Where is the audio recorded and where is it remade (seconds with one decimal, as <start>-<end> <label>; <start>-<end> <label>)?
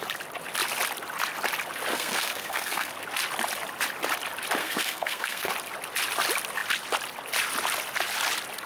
0.0-1.9 recorded; 1.9-2.9 remade; 2.9-4.6 recorded; 4.6-5.5 remade; 5.5-8.7 recorded